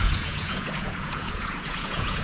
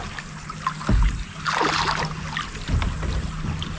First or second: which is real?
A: second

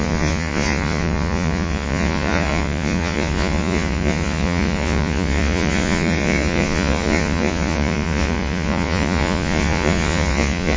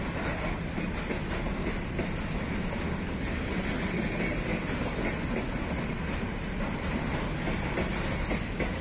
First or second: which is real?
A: second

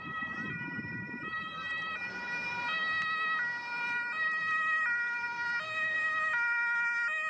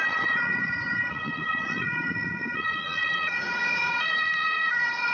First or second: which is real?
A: first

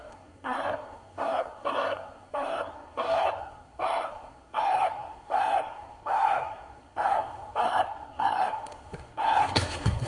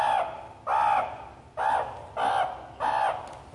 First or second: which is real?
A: second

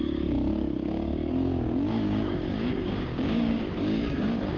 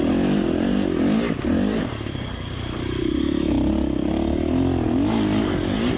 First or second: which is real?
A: second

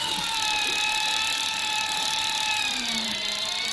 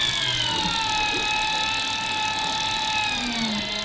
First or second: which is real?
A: second